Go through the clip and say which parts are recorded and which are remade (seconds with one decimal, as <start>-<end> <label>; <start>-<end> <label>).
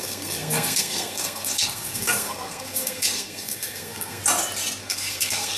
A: 0.0-4.2 remade; 4.2-4.8 recorded; 4.8-5.6 remade